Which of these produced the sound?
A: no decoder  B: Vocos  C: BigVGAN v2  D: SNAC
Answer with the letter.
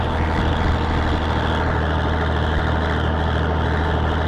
A